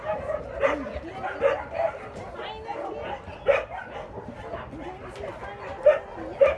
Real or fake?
real